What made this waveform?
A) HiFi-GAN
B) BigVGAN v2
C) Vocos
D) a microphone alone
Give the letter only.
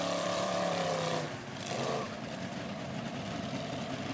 B